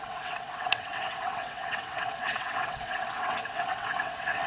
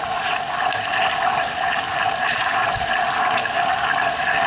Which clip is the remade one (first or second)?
first